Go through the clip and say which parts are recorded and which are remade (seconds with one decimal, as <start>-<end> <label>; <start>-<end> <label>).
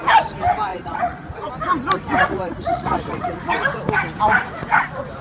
0.0-0.7 recorded; 0.7-1.5 remade; 1.5-2.2 recorded; 2.2-3.8 remade; 3.8-4.6 recorded; 4.6-5.2 remade